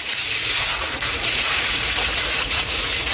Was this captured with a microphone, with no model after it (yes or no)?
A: no